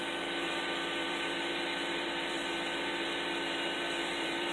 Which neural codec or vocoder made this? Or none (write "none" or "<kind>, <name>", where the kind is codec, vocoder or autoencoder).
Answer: vocoder, BigVGAN v2